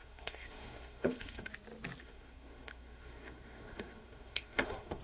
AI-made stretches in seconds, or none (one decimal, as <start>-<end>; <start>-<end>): 0.0-1.5; 2.0-5.0